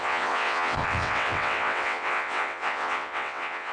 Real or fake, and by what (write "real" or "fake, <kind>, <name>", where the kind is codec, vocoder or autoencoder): fake, vocoder, WaveNeXt